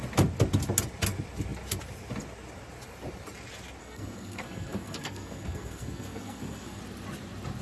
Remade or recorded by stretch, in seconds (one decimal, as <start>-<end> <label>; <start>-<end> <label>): 0.0-3.8 recorded; 3.8-6.8 remade; 6.8-7.6 recorded